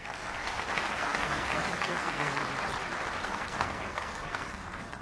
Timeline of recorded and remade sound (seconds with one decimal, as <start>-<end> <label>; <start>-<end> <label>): 0.0-2.4 remade; 2.4-3.2 recorded; 3.2-5.0 remade